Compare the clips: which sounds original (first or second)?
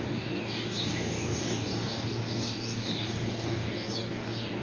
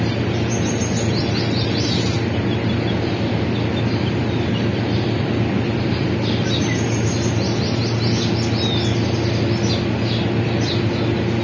second